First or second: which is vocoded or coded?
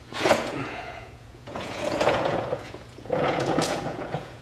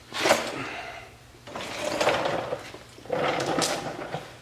first